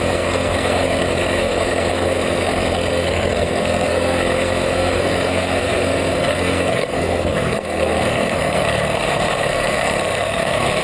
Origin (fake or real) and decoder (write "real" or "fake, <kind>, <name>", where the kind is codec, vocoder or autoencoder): fake, codec, SNAC